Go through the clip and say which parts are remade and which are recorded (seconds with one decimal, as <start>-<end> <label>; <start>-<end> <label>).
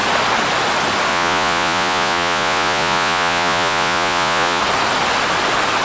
0.0-1.1 recorded; 1.1-4.6 remade; 4.6-5.8 recorded